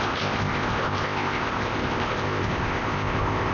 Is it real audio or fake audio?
fake